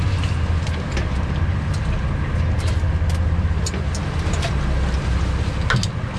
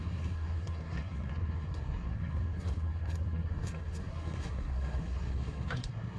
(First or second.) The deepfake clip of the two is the second